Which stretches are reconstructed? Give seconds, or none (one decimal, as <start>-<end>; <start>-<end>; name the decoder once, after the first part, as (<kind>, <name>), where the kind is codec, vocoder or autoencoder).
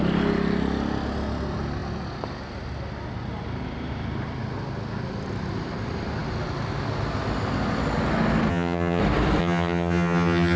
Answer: 8.5-9.0 (vocoder, HiFi-GAN); 9.4-10.6